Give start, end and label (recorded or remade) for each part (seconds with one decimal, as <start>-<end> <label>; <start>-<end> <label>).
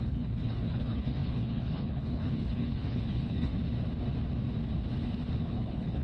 0.0-3.5 remade; 3.5-5.4 recorded; 5.4-6.0 remade